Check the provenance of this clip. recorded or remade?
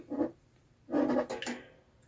recorded